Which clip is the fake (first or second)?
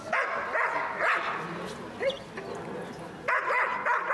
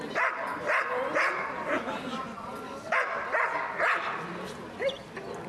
second